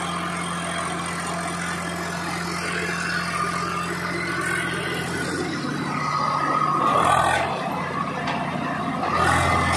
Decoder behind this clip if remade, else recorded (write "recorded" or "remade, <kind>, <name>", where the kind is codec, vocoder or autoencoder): recorded